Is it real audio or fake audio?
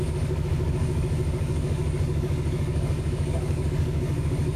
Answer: fake